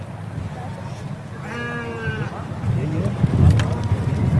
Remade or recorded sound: recorded